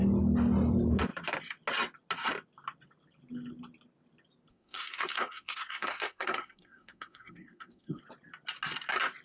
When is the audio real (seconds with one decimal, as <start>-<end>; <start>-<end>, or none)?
0.0-4.5; 8.0-9.2